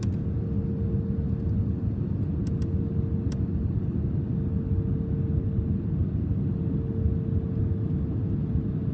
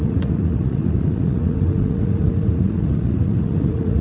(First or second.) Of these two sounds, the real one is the first